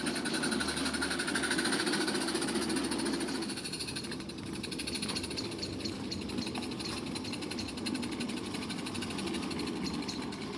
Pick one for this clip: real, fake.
real